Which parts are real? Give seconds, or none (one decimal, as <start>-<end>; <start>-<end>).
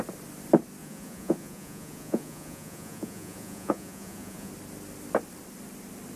0.0-0.8; 4.5-6.2